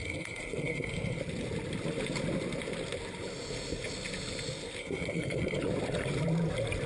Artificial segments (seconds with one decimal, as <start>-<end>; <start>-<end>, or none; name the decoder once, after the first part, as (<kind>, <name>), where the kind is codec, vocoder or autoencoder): 0.0-1.2 (codec, SNAC); 4.8-5.6

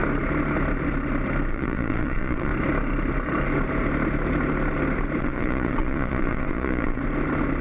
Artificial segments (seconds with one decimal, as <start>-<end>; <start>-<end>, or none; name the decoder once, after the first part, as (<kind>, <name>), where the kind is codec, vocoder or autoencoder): 1.5-2.5 (vocoder, Vocos); 5.2-7.0

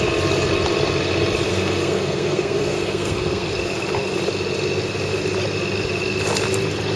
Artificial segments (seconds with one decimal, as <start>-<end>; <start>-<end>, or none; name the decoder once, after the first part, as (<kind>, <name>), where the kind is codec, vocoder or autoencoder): 1.5-3.5 (codec, SNAC)

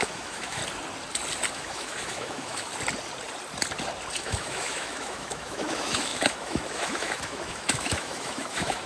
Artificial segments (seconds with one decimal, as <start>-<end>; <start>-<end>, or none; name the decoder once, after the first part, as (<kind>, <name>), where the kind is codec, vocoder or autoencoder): 0.0-0.6 (autoencoder, DAC-VAE); 1.5-2.7; 4.2-8.9

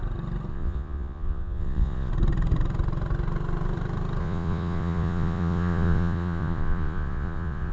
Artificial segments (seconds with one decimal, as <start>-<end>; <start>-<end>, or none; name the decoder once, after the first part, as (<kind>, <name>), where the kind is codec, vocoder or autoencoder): 0.5-2.1 (vocoder, Vocos); 4.2-7.7

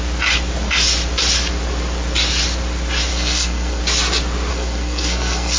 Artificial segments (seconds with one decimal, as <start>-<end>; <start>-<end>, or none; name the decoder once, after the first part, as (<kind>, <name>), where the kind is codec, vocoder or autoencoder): 3.1-3.8 (codec, SNAC); 4.5-5.6

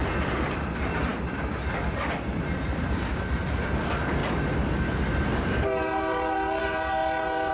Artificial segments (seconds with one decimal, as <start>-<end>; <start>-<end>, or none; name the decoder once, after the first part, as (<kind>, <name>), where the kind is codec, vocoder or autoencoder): 0.0-4.2 (vocoder, BigVGAN v2); 5.1-7.5